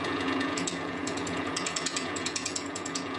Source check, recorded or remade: remade